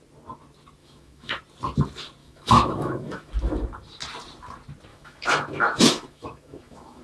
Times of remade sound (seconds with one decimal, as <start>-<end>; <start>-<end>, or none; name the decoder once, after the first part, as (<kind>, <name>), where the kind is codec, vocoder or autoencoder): 0.8-1.4 (autoencoder, DAC-VAE); 2.2-3.3; 4.9-7.0